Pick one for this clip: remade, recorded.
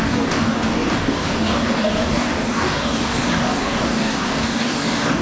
remade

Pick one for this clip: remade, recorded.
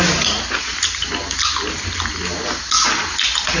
recorded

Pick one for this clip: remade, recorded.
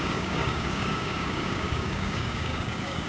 remade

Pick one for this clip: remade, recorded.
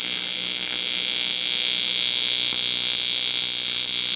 recorded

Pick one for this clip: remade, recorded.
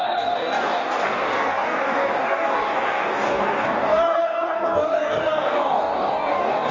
remade